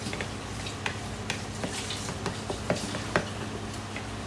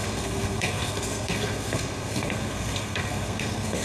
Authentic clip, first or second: first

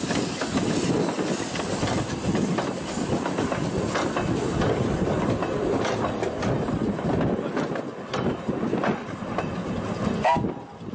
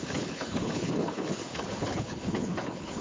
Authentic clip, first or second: first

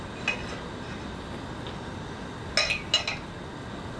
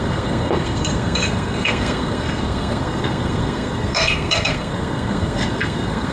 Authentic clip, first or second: first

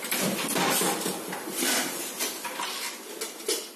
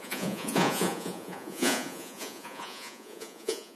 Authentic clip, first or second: first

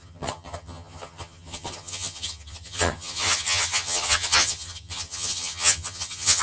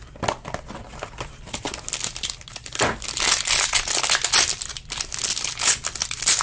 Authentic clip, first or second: second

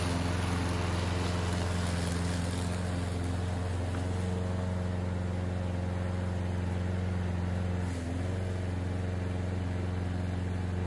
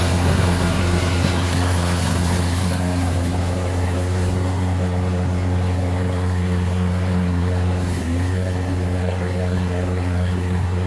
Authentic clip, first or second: first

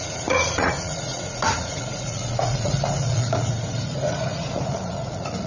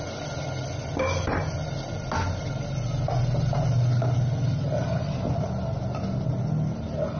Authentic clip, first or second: second